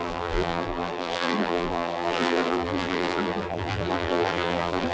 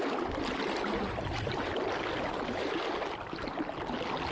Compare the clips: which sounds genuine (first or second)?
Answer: second